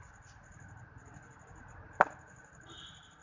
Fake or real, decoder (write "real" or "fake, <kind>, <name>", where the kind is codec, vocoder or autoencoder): real